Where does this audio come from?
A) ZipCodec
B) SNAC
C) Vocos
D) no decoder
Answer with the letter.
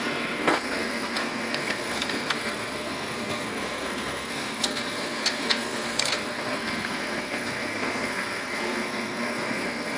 B